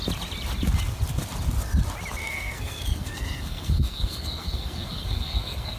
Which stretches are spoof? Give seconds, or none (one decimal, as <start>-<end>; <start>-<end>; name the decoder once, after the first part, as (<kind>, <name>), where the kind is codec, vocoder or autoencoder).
2.2-5.8 (codec, SNAC)